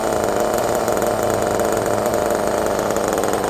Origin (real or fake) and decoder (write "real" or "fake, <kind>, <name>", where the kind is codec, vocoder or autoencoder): real